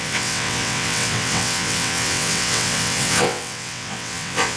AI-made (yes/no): yes